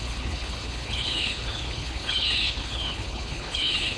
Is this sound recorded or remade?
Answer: remade